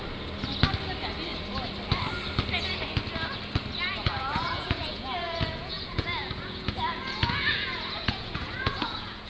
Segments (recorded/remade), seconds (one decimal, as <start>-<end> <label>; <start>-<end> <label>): 0.0-3.9 recorded; 3.9-9.3 remade